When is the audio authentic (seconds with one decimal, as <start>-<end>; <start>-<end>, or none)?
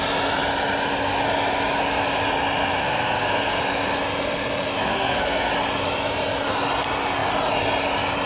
0.0-2.8; 3.6-4.9; 5.5-8.3